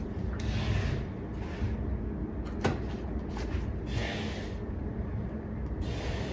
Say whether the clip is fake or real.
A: real